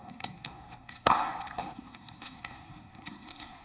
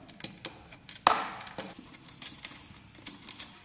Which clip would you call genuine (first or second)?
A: second